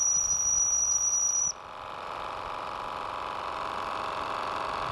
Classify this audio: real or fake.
fake